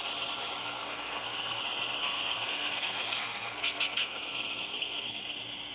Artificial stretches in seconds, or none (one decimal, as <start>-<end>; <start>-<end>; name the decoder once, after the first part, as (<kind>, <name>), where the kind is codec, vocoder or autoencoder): 0.6-1.6 (codec, SNAC); 2.0-5.2